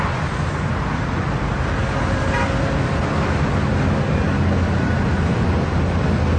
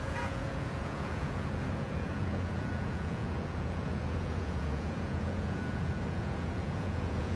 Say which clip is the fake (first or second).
second